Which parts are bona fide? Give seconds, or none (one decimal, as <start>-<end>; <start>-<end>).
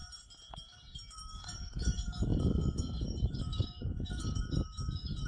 0.0-1.1